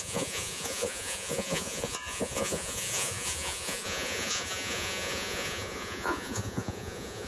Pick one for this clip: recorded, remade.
remade